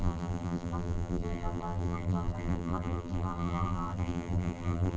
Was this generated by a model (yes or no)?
yes